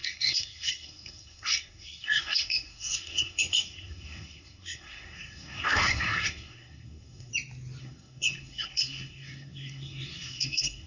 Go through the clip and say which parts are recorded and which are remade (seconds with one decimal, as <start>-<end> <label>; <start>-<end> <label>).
0.0-7.3 remade; 7.3-7.8 recorded; 7.8-10.9 remade